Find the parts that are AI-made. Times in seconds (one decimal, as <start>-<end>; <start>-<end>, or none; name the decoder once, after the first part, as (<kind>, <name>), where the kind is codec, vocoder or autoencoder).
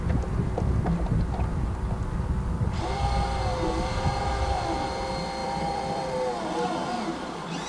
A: 5.4-6.1 (vocoder, BigVGAN v2); 7.1-7.7